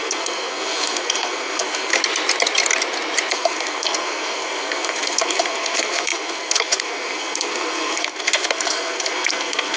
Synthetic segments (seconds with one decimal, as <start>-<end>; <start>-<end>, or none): 0.0-2.0; 3.3-9.8